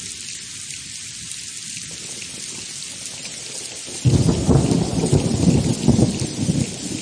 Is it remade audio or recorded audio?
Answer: recorded